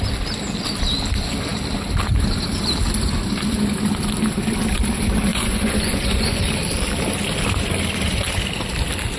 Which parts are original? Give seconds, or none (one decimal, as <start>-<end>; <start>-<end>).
0.0-5.3; 6.4-9.2